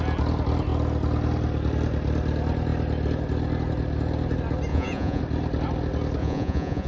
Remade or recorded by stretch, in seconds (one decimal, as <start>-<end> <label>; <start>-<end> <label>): 0.0-4.7 recorded; 4.7-5.2 remade; 5.2-6.2 recorded; 6.2-6.9 remade